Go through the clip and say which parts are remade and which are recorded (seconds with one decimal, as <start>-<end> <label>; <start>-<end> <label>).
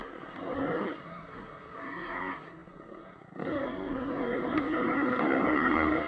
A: 0.0-6.1 remade